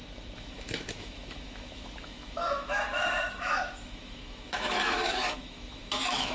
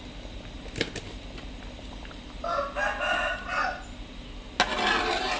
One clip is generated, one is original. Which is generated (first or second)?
first